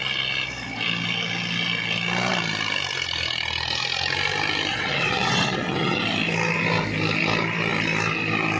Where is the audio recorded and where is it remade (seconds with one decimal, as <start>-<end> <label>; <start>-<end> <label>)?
0.0-4.7 recorded; 4.7-6.0 remade; 6.0-8.6 recorded